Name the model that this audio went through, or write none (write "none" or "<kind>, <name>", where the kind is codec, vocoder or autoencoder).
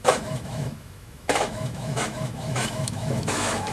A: autoencoder, DAC-VAE